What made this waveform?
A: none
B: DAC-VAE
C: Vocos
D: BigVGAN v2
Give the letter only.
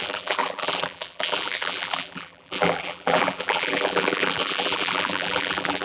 D